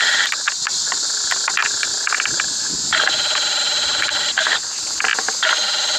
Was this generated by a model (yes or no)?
no